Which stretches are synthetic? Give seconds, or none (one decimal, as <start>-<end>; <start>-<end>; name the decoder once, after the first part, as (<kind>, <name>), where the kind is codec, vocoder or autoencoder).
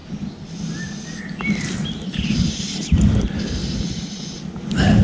none